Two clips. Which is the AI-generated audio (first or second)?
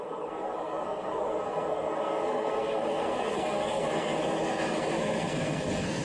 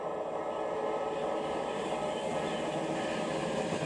first